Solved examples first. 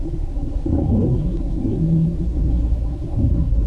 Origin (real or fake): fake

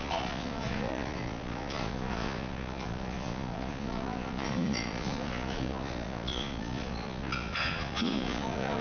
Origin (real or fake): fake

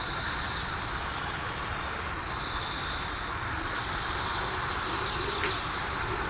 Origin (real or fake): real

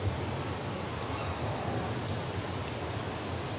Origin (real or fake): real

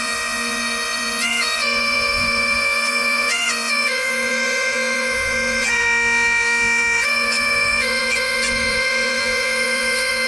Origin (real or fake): fake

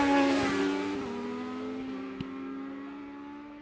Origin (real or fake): real